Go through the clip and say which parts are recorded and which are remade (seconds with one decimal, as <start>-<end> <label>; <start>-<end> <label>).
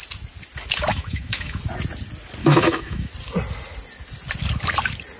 0.0-0.9 recorded; 0.9-1.6 remade; 1.6-2.4 recorded; 2.4-3.1 remade; 3.1-5.2 recorded